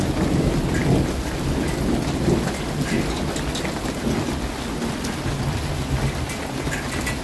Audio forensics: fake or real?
real